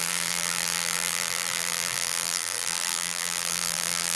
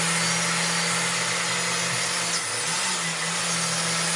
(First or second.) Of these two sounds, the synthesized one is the first